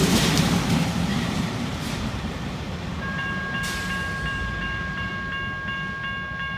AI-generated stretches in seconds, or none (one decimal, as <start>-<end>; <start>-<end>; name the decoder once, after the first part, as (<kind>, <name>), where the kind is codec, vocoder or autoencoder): 1.1-5.1 (vocoder, BigVGAN v2)